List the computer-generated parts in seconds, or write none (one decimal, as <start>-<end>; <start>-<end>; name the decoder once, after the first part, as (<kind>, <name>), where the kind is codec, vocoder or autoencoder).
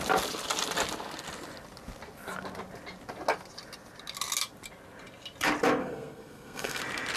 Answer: 5.8-6.8 (codec, SNAC)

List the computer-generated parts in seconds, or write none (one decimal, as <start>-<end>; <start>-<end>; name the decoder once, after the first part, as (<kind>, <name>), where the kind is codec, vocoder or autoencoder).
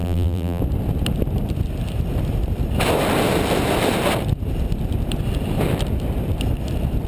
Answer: 0.0-0.6 (vocoder, BigVGAN v2)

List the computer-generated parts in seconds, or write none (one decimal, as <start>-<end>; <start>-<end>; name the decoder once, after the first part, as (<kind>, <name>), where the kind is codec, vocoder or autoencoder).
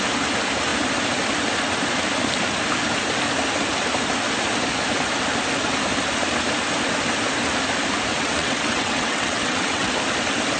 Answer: 8.1-9.9 (vocoder, WaveNeXt)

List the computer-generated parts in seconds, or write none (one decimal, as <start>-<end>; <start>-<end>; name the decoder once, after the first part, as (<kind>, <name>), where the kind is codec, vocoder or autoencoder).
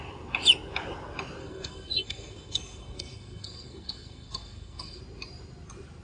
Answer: 1.4-5.0 (codec, SNAC)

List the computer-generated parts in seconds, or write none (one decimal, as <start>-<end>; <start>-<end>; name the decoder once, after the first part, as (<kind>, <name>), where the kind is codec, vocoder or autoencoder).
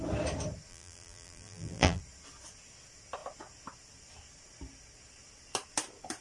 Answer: 0.7-2.0 (vocoder, BigVGAN v2)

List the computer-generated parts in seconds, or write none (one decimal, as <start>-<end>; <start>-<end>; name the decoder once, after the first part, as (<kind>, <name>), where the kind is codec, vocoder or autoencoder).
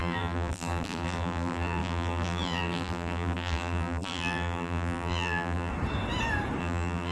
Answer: 0.0-5.7 (vocoder, BigVGAN v2); 6.6-7.1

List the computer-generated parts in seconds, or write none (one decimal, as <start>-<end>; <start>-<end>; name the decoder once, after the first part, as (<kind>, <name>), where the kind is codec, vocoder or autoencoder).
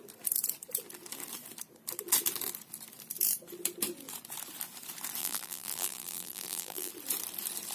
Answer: 5.2-6.9 (vocoder, BigVGAN v2)